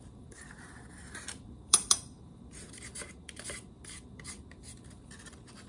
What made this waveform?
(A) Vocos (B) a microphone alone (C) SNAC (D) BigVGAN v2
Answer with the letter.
D